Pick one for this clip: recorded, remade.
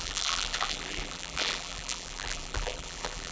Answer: remade